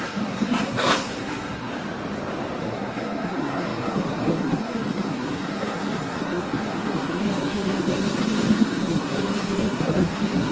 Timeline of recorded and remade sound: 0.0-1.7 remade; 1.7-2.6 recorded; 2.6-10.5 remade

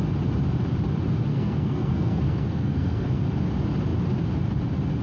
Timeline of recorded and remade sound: 0.0-1.3 recorded; 1.3-3.2 remade; 3.2-5.0 recorded

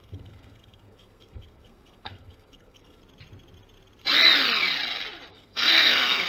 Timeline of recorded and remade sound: 0.0-3.0 remade; 3.0-5.3 recorded; 5.3-6.3 remade

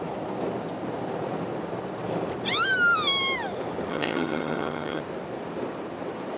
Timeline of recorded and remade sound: 0.0-3.9 recorded; 3.9-5.0 remade; 5.0-6.4 recorded

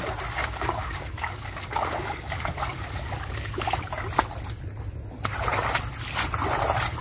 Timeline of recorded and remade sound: 0.0-0.4 recorded; 0.4-3.7 remade; 3.7-7.0 recorded

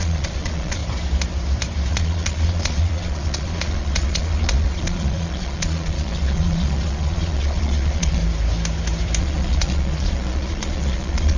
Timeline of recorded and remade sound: 0.0-0.8 remade; 0.8-1.9 recorded; 1.9-8.2 remade; 8.2-9.2 recorded; 9.2-11.4 remade

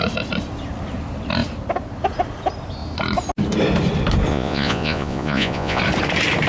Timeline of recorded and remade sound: 0.0-4.3 recorded; 4.3-5.8 remade; 5.8-6.5 recorded